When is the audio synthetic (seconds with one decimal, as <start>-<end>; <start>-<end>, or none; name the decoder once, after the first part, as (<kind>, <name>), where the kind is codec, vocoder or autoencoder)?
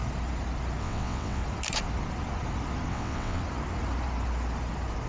0.8-1.4 (vocoder, WaveNeXt); 2.9-3.4